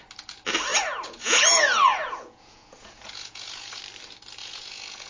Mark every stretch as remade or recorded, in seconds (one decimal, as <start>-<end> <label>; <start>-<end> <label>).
0.0-0.7 recorded; 0.7-3.8 remade; 3.8-4.4 recorded; 4.4-5.1 remade